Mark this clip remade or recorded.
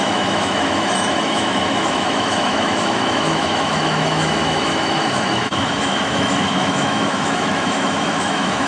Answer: remade